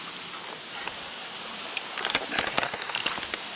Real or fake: real